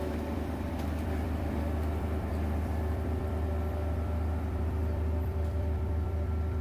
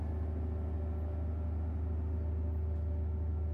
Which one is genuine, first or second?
second